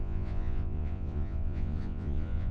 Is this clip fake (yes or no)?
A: yes